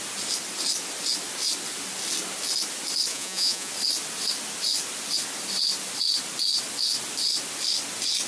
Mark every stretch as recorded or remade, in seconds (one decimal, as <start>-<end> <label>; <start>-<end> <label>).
0.0-3.1 recorded; 3.1-3.7 remade; 3.7-8.3 recorded